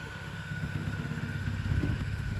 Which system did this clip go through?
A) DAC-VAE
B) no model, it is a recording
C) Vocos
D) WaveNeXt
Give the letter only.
A